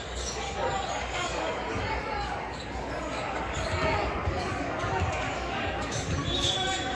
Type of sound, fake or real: fake